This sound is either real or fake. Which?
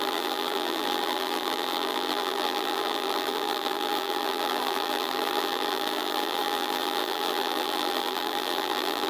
fake